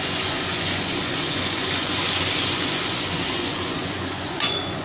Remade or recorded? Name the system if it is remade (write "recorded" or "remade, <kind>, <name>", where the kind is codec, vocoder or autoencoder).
remade, vocoder, Vocos